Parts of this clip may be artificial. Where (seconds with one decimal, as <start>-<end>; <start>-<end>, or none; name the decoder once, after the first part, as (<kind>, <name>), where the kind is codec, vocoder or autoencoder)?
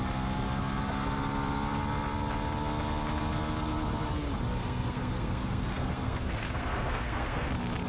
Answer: 4.6-7.5 (codec, SNAC)